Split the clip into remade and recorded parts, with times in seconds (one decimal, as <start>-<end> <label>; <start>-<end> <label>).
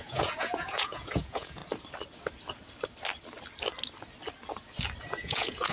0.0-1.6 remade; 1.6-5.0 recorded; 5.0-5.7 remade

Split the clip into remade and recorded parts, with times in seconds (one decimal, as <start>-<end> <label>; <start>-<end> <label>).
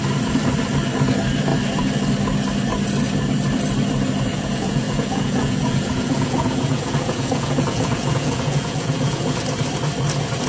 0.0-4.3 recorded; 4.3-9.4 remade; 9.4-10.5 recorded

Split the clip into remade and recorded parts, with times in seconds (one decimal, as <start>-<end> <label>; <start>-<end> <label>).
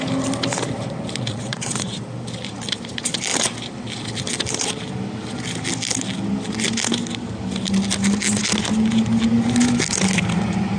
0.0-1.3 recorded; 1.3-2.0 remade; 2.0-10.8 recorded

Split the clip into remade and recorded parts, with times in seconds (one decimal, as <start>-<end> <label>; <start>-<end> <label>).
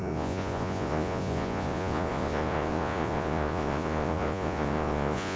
0.0-5.4 remade